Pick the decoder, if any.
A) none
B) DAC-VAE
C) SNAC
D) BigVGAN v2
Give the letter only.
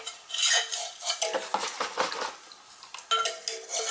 A